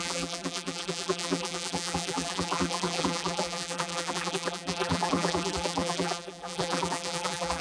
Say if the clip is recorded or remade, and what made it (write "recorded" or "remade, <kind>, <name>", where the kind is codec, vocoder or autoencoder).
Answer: remade, vocoder, BigVGAN v2